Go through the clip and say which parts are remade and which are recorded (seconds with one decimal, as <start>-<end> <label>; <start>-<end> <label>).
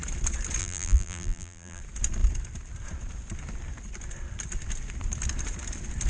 0.0-0.6 recorded; 0.6-1.8 remade; 1.8-6.1 recorded